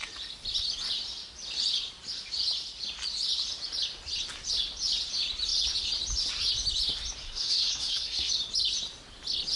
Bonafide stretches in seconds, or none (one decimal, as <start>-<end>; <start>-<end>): 0.0-7.2; 8.3-9.5